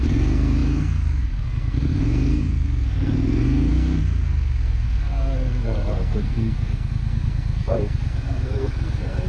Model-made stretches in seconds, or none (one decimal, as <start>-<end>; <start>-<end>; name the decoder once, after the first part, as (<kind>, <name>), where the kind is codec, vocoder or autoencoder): 0.0-9.3 (codec, SNAC)